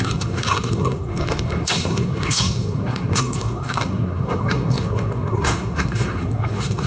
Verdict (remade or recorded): remade